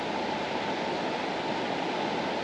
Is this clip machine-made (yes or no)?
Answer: no